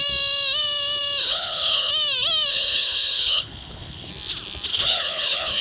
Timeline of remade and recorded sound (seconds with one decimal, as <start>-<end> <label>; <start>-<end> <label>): 0.0-1.2 recorded; 1.2-1.9 remade; 1.9-2.5 recorded; 2.5-4.1 remade; 4.1-4.7 recorded; 4.7-5.6 remade

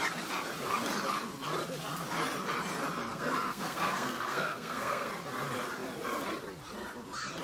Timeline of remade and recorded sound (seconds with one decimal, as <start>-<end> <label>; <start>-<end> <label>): 0.0-3.1 recorded; 3.1-5.1 remade; 5.1-7.4 recorded

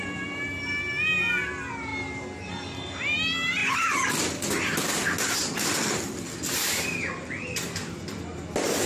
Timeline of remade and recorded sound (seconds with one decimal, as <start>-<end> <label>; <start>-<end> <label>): 0.0-8.9 recorded

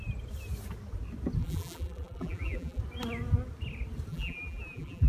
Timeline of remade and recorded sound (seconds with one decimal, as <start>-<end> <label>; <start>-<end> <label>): 0.0-1.4 recorded; 1.4-2.8 remade; 2.8-4.1 recorded; 4.1-5.1 remade

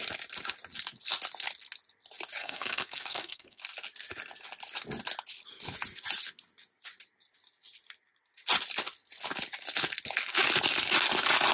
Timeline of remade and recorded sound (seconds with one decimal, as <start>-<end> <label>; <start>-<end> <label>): 0.0-2.4 recorded; 2.4-3.6 remade; 3.6-11.5 recorded

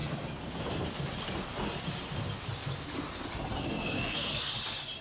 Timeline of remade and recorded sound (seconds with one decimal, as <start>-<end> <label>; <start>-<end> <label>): 0.0-3.5 recorded; 3.5-4.5 remade; 4.5-5.0 recorded

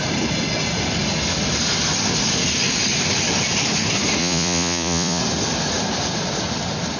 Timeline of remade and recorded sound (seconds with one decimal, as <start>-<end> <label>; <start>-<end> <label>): 0.0-4.2 recorded; 4.2-5.2 remade; 5.2-7.0 recorded